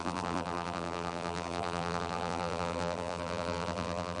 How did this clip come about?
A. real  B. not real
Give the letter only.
B